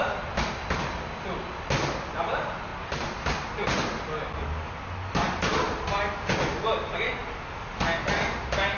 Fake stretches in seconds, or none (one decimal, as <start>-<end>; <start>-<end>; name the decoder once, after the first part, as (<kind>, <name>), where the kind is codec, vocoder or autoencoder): none